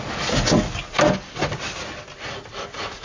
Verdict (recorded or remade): recorded